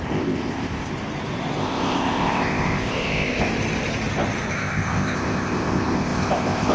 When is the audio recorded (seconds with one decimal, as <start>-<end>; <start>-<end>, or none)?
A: 0.9-1.6; 3.5-4.5